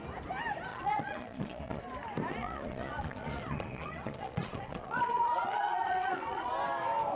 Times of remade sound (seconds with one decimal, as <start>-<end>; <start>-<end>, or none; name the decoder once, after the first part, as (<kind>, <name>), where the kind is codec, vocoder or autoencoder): 0.7-1.8 (vocoder, Vocos); 2.3-6.5